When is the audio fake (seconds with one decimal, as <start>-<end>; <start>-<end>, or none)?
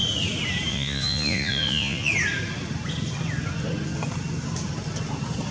0.7-2.1